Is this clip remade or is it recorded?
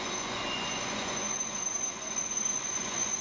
remade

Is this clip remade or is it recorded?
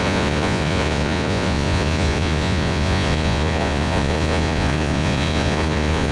remade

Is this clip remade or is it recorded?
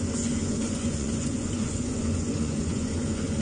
remade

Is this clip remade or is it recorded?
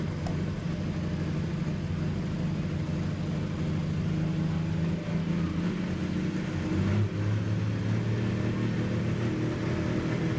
recorded